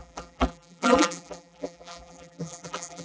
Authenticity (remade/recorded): remade